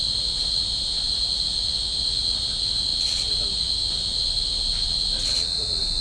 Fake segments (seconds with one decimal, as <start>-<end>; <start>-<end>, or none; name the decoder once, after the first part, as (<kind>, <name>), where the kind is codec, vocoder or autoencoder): none